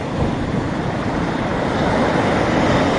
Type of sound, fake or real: real